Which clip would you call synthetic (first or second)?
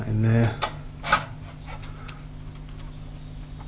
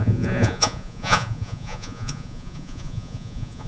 second